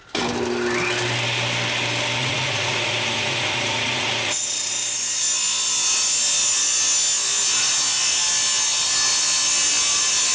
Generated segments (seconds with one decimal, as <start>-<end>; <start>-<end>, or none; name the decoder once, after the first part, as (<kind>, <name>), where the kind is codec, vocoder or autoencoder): 2.2-4.7 (vocoder, Vocos)